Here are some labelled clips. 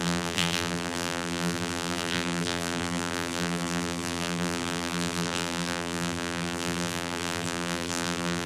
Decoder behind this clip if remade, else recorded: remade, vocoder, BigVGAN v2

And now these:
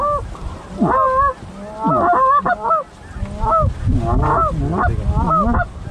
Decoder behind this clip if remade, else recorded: recorded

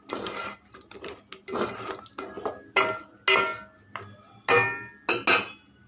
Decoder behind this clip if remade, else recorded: recorded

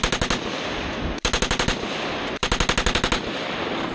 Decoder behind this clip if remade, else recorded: recorded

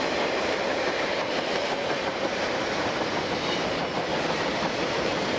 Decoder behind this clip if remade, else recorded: remade, vocoder, BigVGAN v2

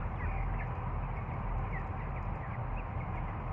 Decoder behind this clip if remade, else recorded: recorded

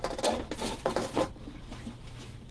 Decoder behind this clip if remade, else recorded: recorded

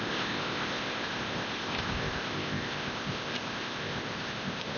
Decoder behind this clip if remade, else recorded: remade, codec, ZipCodec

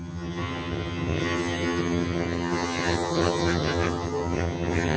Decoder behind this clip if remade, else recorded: remade, vocoder, HiFi-GAN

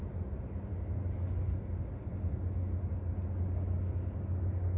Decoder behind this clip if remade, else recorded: recorded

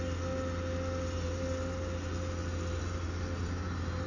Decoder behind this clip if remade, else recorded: recorded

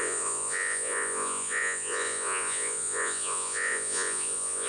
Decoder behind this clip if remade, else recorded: remade, vocoder, Vocos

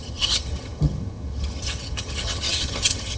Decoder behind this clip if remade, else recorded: remade, vocoder, HiFi-GAN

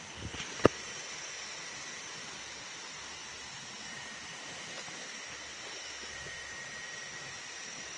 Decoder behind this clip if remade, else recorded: recorded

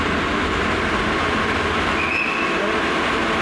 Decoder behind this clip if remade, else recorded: recorded